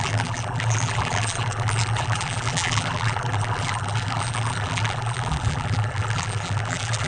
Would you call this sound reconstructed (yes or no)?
yes